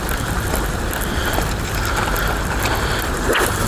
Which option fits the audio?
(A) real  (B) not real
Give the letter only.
A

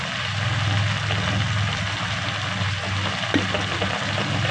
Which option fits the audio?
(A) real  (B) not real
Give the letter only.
A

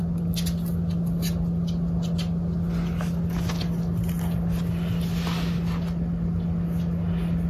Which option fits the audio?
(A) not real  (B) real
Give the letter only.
B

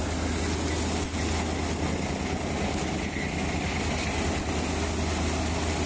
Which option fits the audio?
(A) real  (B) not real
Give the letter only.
A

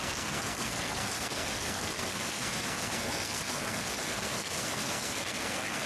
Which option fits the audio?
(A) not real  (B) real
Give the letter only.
A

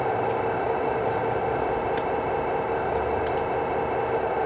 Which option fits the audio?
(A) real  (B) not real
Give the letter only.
A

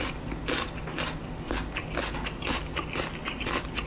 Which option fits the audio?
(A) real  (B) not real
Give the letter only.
A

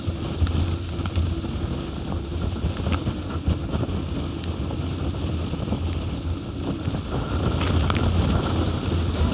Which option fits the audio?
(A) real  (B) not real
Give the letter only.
A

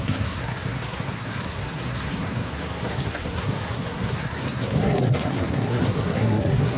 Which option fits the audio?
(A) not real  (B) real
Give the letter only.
A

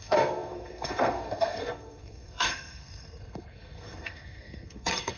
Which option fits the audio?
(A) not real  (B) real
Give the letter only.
A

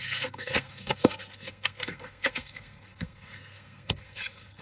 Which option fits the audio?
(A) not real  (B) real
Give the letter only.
A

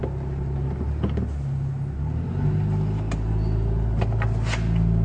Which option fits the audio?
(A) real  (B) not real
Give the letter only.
A